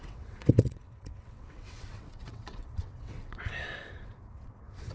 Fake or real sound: fake